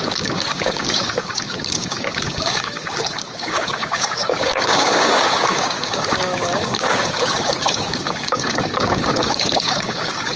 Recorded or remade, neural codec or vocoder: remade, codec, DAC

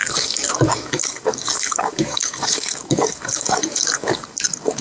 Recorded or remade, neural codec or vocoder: remade, codec, DAC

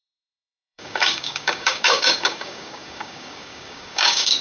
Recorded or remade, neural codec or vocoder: remade, codec, DAC